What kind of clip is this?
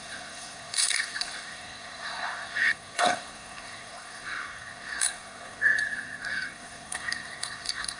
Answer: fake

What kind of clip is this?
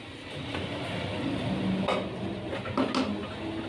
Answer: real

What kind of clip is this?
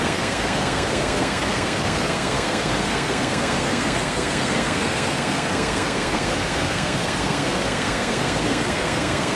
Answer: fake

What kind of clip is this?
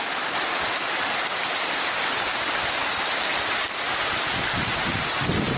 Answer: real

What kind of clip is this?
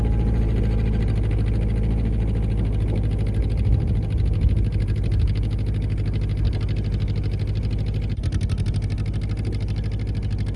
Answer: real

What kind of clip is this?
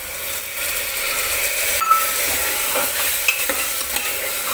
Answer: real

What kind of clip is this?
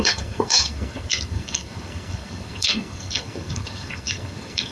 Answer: fake